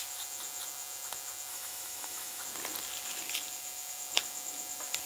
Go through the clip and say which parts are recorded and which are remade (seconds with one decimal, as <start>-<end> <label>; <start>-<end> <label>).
0.0-1.5 recorded; 1.5-2.4 remade; 2.4-5.1 recorded